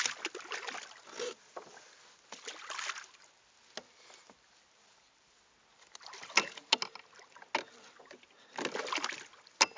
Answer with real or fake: real